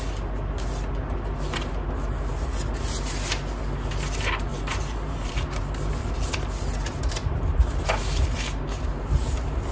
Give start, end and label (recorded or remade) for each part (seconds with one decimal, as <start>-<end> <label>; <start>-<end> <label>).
0.0-4.5 recorded; 4.5-5.3 remade; 5.3-9.7 recorded